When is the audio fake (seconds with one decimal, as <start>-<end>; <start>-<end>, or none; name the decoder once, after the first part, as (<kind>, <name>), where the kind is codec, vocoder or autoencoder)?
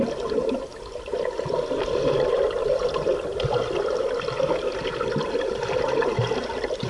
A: none